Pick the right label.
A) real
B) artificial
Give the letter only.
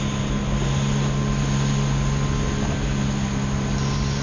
A